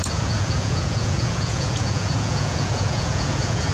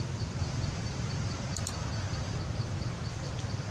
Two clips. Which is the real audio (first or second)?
second